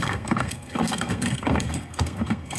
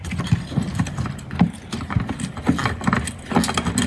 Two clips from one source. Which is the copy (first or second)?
first